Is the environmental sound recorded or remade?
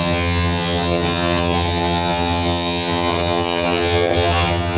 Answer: remade